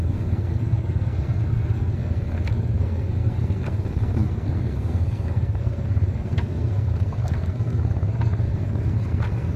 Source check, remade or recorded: remade